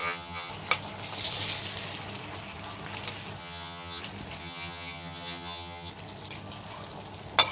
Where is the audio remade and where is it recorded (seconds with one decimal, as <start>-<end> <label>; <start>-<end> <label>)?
0.0-0.5 remade; 0.5-3.4 recorded; 3.4-4.0 remade; 4.0-4.4 recorded; 4.4-5.9 remade; 5.9-7.5 recorded